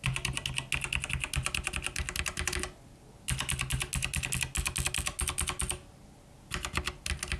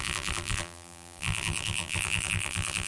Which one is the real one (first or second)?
first